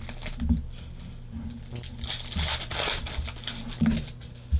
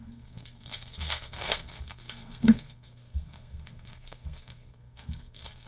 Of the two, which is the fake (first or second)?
second